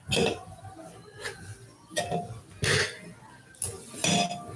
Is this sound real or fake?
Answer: real